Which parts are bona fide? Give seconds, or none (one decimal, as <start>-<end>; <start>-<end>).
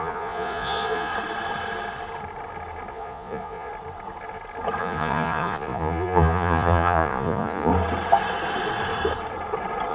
1.1-2.9; 3.7-4.8; 7.7-9.9